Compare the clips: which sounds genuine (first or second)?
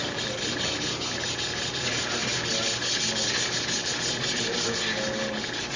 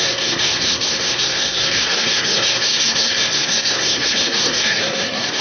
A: first